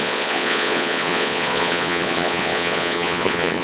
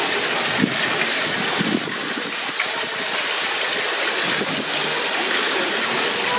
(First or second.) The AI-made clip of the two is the first